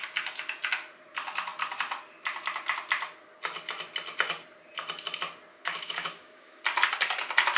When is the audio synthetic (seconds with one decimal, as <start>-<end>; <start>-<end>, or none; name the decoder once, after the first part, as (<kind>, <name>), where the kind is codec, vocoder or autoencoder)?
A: 5.5-6.6 (autoencoder, DAC-VAE)